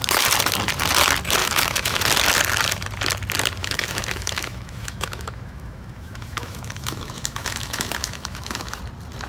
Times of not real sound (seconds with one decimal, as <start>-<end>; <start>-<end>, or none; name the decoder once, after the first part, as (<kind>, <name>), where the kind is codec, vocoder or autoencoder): 1.4-2.0 (autoencoder, DAC-VAE); 3.6-8.8